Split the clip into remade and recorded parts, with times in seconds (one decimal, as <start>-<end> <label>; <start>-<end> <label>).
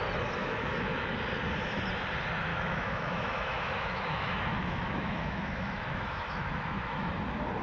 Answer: 0.0-0.4 recorded; 0.4-1.1 remade; 1.1-2.5 recorded; 2.5-7.1 remade; 7.1-7.6 recorded